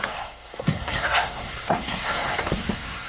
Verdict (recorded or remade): remade